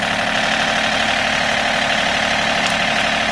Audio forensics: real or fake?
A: real